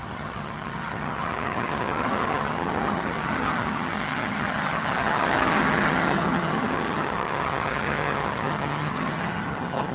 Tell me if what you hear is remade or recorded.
remade